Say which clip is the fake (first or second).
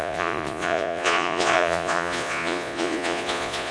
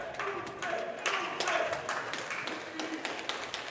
first